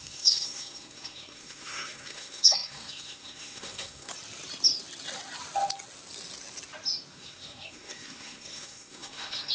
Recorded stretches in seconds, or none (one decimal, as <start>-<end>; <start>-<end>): 4.1-7.1